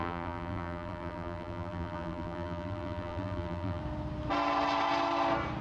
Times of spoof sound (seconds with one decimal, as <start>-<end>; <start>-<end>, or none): 0.0-3.8